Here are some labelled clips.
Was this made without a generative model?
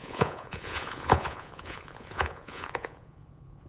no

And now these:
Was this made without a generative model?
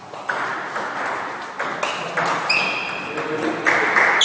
yes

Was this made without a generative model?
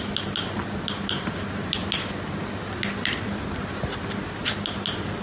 yes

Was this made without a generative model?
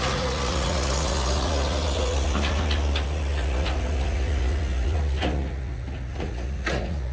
no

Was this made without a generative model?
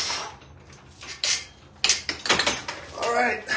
yes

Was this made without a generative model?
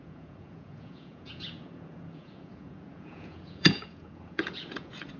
no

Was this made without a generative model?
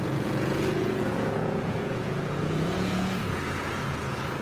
no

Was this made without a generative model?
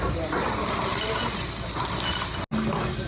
yes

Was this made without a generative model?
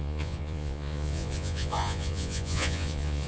no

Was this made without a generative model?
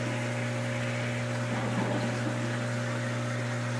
yes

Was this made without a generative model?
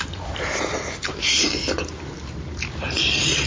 yes